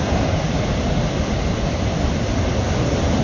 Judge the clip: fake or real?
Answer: real